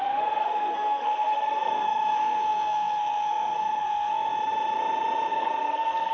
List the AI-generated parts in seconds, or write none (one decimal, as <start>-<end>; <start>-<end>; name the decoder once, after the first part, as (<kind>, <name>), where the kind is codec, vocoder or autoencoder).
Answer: 0.0-4.3 (codec, SNAC); 5.3-6.1